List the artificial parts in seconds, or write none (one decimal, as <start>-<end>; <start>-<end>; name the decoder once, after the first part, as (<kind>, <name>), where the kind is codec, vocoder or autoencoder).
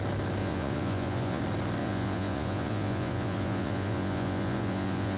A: 0.4-1.4 (vocoder, Vocos); 1.8-5.2